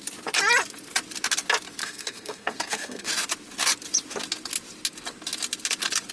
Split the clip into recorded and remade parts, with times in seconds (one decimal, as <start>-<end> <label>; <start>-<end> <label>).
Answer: 0.0-1.8 recorded; 1.8-3.1 remade; 3.1-6.1 recorded